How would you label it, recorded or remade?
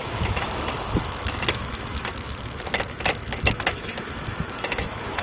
remade